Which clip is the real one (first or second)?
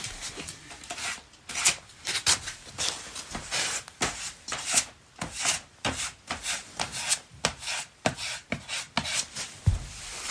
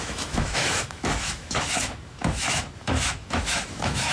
first